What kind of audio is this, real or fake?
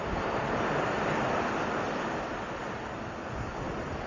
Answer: real